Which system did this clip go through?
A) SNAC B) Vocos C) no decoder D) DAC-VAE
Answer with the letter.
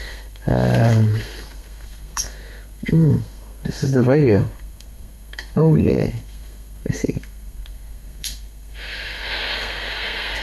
A